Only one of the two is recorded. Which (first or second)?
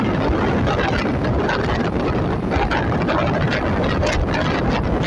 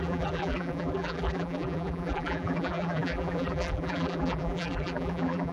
first